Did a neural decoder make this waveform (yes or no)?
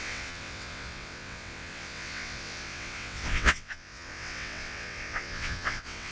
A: yes